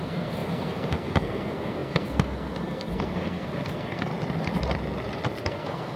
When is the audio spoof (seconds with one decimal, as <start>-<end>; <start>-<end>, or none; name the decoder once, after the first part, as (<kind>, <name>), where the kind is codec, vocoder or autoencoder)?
0.0-4.1 (codec, SNAC); 5.4-6.0